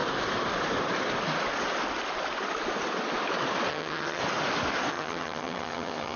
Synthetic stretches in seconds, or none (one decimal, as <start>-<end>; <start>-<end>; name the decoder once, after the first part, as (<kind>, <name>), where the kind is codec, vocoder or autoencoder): 3.7-4.2 (vocoder, HiFi-GAN); 4.9-6.2